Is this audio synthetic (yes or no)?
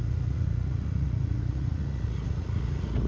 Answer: yes